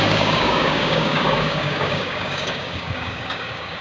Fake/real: fake